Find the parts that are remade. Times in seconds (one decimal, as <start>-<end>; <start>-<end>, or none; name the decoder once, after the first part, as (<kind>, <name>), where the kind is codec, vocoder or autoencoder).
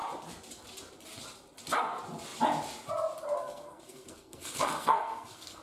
3.4-5.6 (codec, SNAC)